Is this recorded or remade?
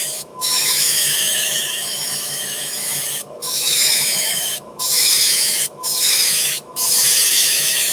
remade